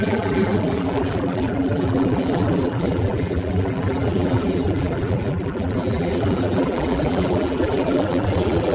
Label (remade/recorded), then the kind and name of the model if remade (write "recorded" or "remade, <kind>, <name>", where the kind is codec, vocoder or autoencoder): remade, vocoder, BigVGAN v2